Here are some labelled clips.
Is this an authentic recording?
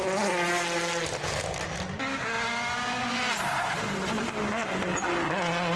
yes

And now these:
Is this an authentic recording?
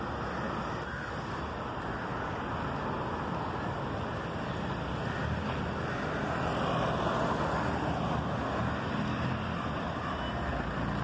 yes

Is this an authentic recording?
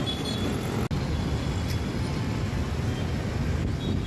yes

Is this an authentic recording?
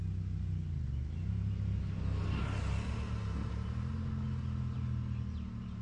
yes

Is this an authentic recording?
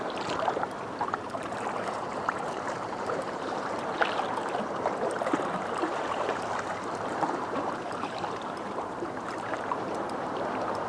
no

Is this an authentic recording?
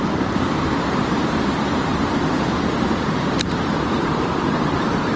no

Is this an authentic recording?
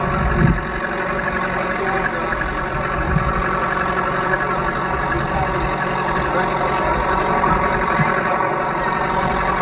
yes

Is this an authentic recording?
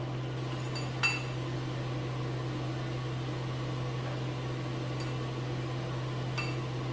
yes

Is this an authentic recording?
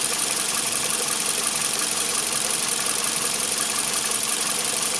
no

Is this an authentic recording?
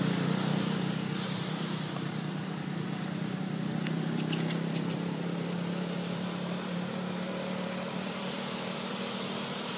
no